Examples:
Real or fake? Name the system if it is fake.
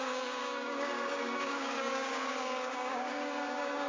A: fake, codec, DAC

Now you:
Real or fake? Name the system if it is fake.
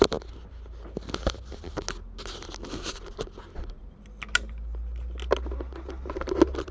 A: real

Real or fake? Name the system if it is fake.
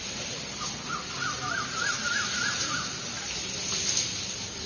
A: real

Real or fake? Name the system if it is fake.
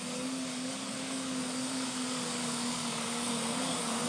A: fake, codec, DAC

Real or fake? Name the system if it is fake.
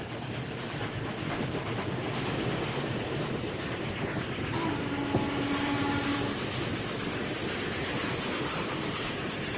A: real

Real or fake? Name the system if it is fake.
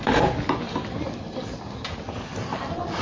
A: real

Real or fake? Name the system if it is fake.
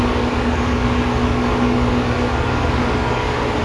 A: fake, codec, DAC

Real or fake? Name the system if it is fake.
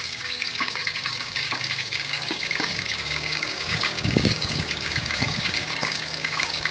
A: fake, codec, DAC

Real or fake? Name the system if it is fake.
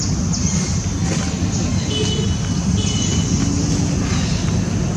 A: real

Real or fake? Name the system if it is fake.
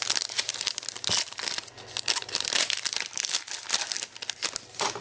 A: real